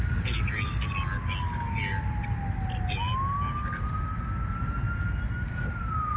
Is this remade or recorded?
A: recorded